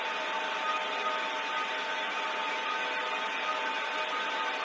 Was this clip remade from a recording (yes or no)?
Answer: no